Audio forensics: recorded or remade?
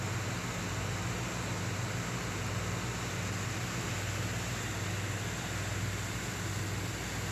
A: recorded